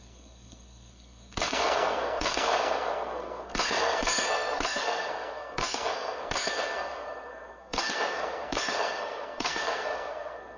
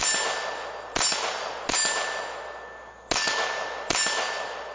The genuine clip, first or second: second